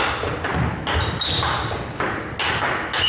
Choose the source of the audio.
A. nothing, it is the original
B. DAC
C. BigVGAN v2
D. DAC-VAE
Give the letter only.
A